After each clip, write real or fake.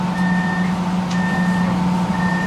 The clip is real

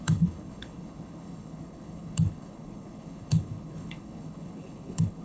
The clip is fake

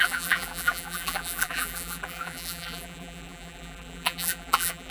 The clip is fake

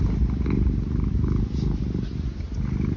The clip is real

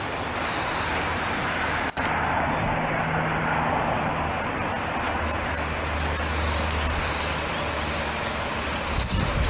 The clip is real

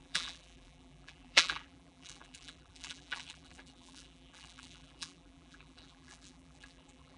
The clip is fake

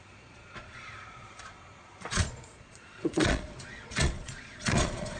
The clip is fake